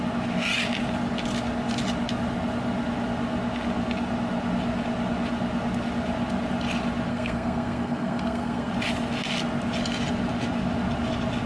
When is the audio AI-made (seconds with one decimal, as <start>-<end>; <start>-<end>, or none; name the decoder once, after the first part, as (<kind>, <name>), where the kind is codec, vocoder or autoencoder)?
7.1-8.7 (codec, SNAC)